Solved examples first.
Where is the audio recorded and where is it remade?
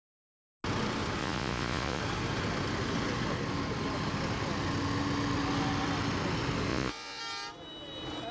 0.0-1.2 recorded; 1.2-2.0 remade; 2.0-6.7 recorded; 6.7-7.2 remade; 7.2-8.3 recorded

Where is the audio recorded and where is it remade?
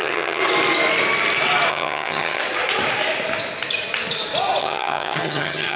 0.0-0.4 remade; 0.4-1.7 recorded; 1.7-2.4 remade; 2.4-4.6 recorded; 4.6-5.8 remade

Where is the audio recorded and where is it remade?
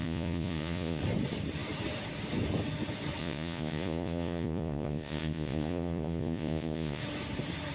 0.0-1.0 remade; 1.0-3.2 recorded; 3.2-7.0 remade; 7.0-7.7 recorded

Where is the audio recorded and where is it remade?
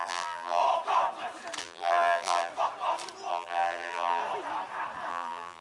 0.0-0.6 remade; 0.6-1.6 recorded; 1.6-2.5 remade; 2.5-3.3 recorded; 3.3-4.2 remade; 4.2-5.1 recorded; 5.1-5.6 remade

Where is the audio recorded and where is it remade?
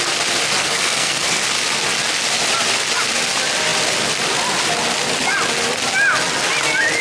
0.0-0.6 recorded; 0.6-1.4 remade; 1.4-7.0 recorded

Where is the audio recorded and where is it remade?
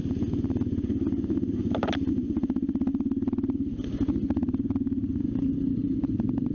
0.0-6.5 recorded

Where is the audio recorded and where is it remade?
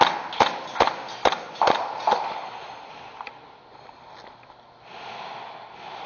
0.0-2.6 recorded; 2.6-3.7 remade; 3.7-6.1 recorded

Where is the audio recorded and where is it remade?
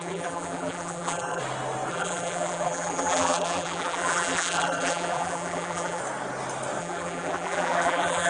0.0-1.4 remade; 1.4-1.9 recorded; 1.9-6.0 remade; 6.0-6.8 recorded; 6.8-8.3 remade